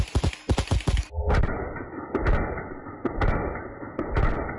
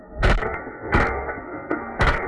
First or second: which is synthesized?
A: second